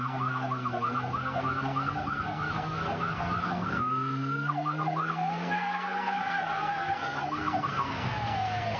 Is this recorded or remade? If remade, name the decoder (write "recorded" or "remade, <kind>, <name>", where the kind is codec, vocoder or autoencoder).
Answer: remade, codec, SNAC